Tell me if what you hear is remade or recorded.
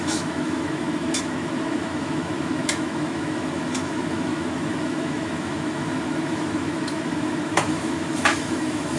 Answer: remade